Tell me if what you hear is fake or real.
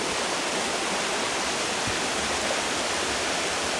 fake